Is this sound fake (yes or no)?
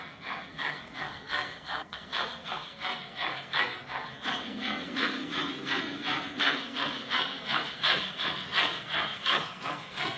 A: yes